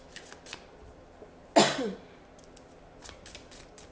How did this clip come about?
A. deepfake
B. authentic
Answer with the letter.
B